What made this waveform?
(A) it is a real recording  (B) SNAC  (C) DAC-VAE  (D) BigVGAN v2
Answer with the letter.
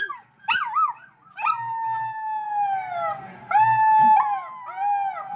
A